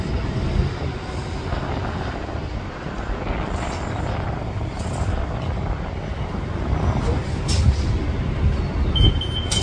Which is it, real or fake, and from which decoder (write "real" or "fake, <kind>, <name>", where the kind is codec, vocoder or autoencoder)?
real